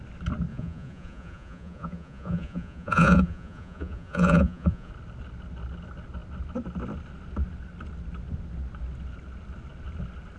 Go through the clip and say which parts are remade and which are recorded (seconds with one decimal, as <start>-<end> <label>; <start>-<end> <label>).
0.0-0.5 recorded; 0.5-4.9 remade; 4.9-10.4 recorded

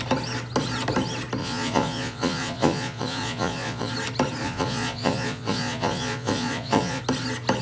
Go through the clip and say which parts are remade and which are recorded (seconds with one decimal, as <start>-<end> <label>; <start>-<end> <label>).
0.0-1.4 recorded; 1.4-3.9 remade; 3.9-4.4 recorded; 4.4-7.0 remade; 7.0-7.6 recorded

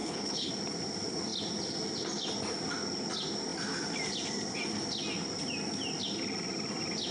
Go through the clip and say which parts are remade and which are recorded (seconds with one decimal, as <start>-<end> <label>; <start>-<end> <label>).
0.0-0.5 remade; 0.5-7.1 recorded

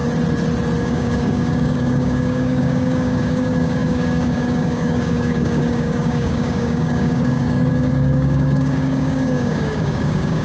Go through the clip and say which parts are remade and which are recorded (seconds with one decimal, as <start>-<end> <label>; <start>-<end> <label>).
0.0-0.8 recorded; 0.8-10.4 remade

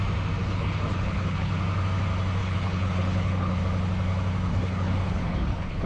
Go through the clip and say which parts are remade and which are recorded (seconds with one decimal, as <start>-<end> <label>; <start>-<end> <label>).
0.0-0.4 recorded; 0.4-1.5 remade; 1.5-2.4 recorded; 2.4-3.6 remade; 3.6-4.5 recorded; 4.5-5.9 remade